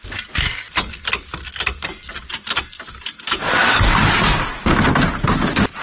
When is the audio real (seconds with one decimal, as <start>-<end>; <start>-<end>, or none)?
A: 0.0-5.8